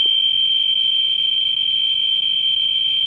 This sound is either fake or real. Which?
real